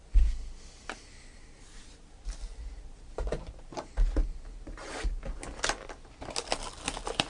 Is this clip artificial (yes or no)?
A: no